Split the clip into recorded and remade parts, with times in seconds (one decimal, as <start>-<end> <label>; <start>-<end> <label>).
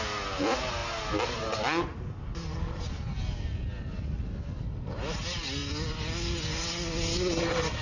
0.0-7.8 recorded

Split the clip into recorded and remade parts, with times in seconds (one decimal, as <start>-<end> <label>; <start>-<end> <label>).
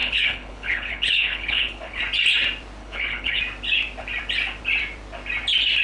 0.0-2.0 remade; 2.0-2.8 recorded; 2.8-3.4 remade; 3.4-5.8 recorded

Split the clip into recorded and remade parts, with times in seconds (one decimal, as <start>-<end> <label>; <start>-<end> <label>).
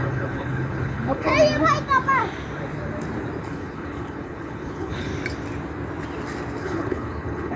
0.0-1.3 remade; 1.3-3.4 recorded; 3.4-5.1 remade; 5.1-6.6 recorded; 6.6-7.6 remade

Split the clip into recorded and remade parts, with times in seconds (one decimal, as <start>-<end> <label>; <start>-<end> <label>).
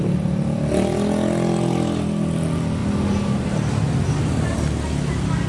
0.0-5.5 recorded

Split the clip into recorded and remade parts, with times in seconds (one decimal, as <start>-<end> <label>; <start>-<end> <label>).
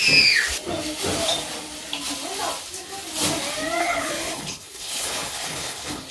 0.0-3.8 recorded; 3.8-6.1 remade